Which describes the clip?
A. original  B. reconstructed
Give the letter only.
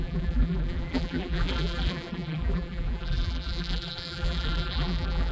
B